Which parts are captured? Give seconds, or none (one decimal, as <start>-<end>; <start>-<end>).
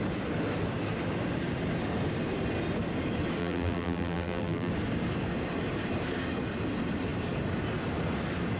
0.0-3.4; 4.7-8.6